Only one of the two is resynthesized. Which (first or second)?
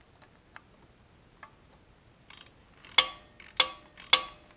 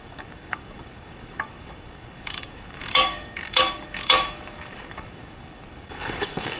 second